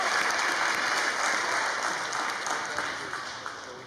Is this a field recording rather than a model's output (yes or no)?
yes